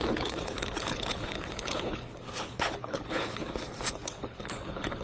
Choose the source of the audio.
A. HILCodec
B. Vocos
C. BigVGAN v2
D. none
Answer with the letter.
A